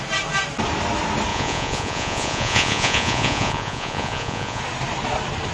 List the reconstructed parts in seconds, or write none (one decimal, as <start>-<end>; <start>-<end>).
1.3-4.6